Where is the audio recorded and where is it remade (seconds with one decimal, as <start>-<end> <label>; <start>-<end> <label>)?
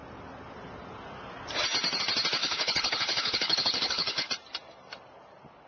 0.0-2.4 recorded; 2.4-4.3 remade; 4.3-5.7 recorded